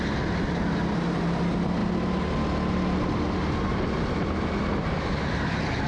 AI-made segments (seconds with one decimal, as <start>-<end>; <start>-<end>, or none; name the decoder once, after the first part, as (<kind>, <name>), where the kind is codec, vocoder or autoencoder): none

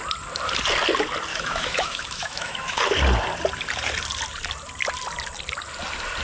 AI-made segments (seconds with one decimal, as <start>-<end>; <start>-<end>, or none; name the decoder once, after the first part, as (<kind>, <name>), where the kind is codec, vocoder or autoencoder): 1.3-2.8 (autoencoder, DAC-VAE)

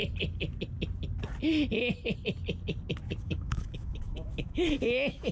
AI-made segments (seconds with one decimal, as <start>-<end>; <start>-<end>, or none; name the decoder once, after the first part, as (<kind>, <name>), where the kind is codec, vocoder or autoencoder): 3.2-5.3 (autoencoder, DAC-VAE)